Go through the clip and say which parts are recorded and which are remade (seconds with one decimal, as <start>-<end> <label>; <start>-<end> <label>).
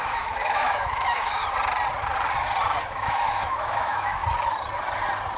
0.0-1.4 remade; 1.4-2.8 recorded; 2.8-4.2 remade; 4.2-5.4 recorded